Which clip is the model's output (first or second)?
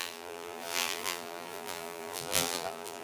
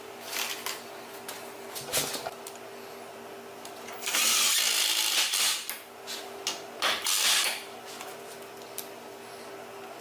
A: first